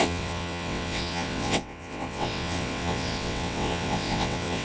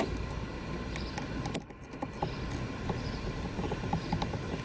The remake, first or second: first